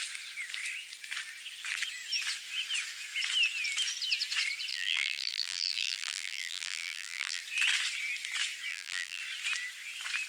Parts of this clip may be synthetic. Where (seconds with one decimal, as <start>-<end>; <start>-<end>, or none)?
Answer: 4.7-7.4; 8.7-9.2